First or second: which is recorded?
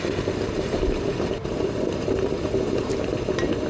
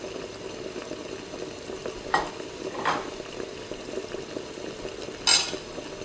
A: second